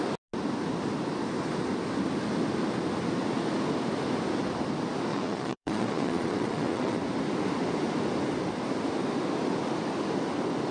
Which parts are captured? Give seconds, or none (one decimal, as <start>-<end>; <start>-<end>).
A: 0.0-5.1; 7.0-10.7